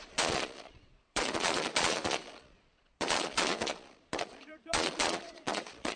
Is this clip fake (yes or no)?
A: yes